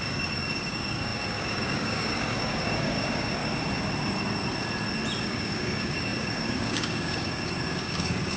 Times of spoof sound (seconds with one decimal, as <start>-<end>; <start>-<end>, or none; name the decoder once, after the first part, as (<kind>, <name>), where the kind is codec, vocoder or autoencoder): 0.0-3.4 (codec, DAC); 5.2-8.4